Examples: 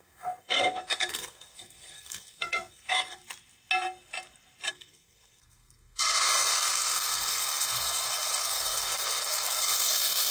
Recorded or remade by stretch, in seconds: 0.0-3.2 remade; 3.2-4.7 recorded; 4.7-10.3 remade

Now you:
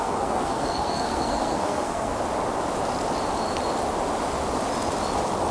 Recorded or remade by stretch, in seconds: 0.0-2.1 remade; 2.1-5.5 recorded

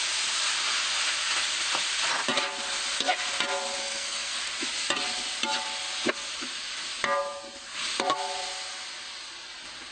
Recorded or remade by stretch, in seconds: 0.0-3.8 recorded; 3.8-4.4 remade; 4.4-9.9 recorded

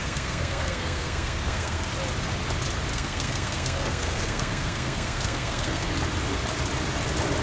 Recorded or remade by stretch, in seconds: 0.0-1.9 remade; 1.9-2.9 recorded; 2.9-5.9 remade; 5.9-7.4 recorded

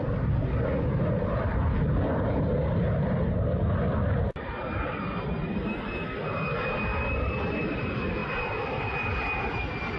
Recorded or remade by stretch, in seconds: 0.0-10.0 recorded

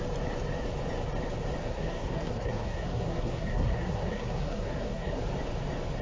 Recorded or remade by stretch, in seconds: 0.0-1.6 recorded; 1.6-5.2 remade; 5.2-6.0 recorded

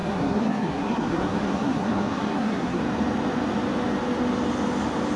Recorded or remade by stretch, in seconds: 0.0-2.8 remade; 2.8-5.2 recorded